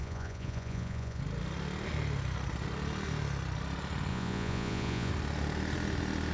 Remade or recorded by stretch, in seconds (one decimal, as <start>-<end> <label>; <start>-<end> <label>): 0.0-1.2 remade; 1.2-4.1 recorded; 4.1-5.1 remade; 5.1-6.3 recorded